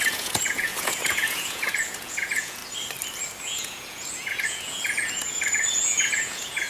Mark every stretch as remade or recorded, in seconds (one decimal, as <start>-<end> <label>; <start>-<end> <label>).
0.0-2.6 remade; 2.6-3.4 recorded; 3.4-6.7 remade